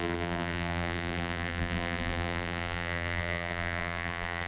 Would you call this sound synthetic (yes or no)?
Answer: yes